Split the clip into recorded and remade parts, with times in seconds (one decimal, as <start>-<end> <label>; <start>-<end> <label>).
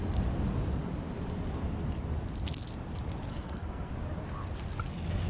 0.0-3.3 recorded; 3.3-3.9 remade; 3.9-5.3 recorded